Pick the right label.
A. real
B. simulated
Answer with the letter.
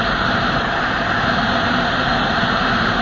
B